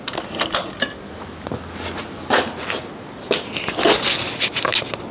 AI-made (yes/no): no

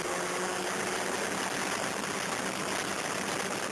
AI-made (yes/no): no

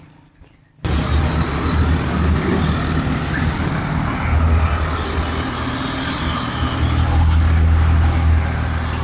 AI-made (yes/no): no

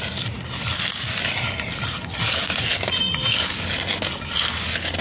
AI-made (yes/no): no